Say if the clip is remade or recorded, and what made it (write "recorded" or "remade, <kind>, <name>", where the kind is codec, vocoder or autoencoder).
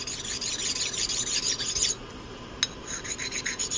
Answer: recorded